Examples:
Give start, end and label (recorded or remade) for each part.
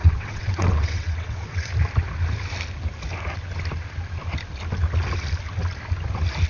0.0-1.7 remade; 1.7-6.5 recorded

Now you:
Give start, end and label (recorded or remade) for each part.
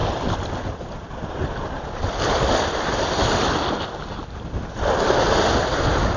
0.0-6.2 recorded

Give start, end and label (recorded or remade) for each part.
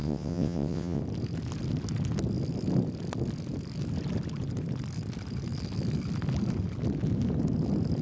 0.0-1.0 remade; 1.0-8.0 recorded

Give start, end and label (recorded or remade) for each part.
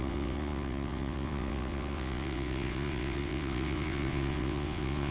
0.0-5.1 remade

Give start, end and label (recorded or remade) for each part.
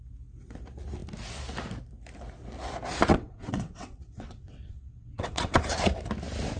0.0-3.1 recorded; 3.1-5.6 remade; 5.6-6.6 recorded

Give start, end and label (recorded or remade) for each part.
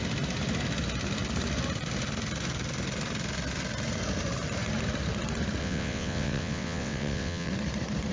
0.0-5.6 recorded; 5.6-7.5 remade; 7.5-8.1 recorded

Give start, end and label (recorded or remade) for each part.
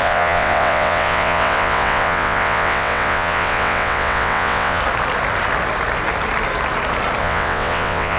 0.0-4.8 remade; 4.8-7.2 recorded; 7.2-8.2 remade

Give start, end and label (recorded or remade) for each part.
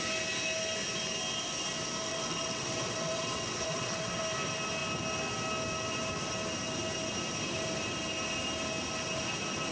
0.0-2.1 recorded; 2.1-4.2 remade; 4.2-9.7 recorded